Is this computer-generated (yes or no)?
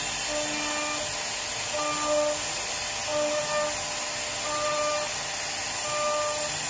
no